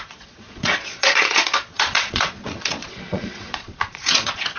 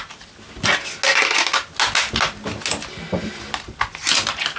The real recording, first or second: second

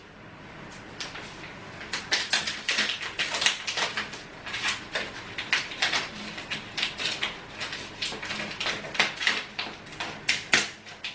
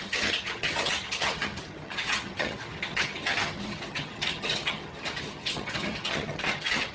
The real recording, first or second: first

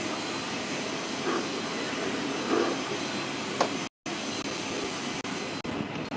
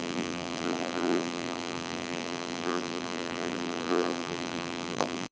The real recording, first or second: first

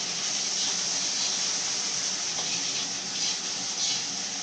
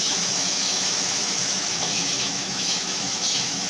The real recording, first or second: first